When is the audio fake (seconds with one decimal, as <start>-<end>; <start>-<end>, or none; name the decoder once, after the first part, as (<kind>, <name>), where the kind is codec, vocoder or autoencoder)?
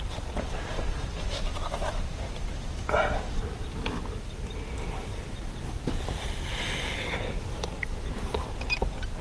1.5-2.6 (vocoder, BigVGAN v2)